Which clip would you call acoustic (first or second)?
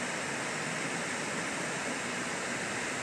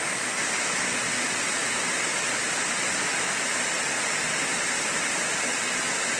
second